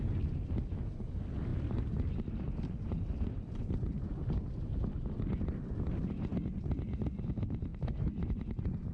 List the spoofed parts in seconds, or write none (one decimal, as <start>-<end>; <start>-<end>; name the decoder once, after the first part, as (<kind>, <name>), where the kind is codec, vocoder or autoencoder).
1.5-4.1 (vocoder, BigVGAN v2); 7.7-8.9